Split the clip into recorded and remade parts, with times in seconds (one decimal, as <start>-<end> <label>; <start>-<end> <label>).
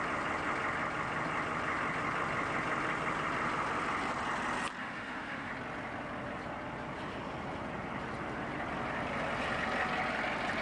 0.0-4.8 recorded; 4.8-5.5 remade; 5.5-10.6 recorded